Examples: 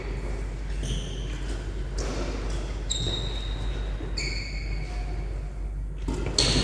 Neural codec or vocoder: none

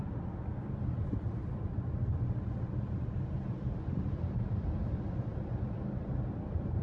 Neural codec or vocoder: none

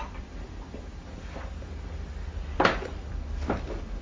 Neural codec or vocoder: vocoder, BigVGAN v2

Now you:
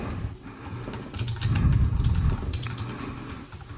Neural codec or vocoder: none